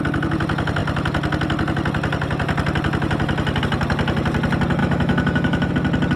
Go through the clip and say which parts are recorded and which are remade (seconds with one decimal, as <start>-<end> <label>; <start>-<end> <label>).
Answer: 0.0-4.8 recorded; 4.8-5.7 remade; 5.7-6.2 recorded